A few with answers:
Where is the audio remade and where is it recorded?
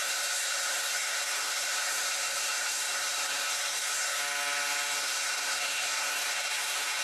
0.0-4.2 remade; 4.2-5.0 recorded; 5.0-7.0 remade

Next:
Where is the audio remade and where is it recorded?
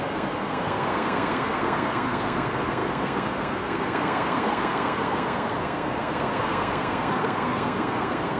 0.0-8.4 remade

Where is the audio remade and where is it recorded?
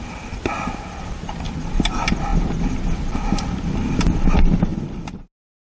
0.0-5.6 recorded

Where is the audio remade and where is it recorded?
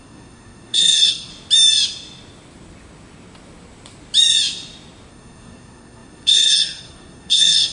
0.0-1.3 remade; 1.3-5.1 recorded; 5.1-7.7 remade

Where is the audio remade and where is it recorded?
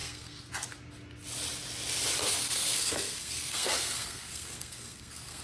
0.0-0.5 remade; 0.5-2.2 recorded; 2.2-5.4 remade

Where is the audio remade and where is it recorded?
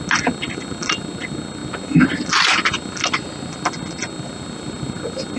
0.0-5.4 recorded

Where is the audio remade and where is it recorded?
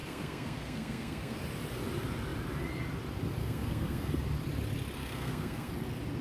0.0-1.4 remade; 1.4-3.4 recorded; 3.4-4.1 remade; 4.1-5.0 recorded; 5.0-5.7 remade; 5.7-6.2 recorded